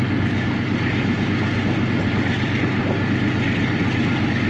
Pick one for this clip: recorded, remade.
recorded